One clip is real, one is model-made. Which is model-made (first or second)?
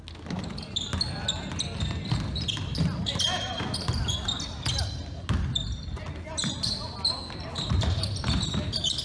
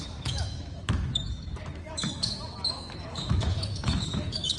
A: second